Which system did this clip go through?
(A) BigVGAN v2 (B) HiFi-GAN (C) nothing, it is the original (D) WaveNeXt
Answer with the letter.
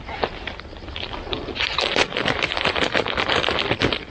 C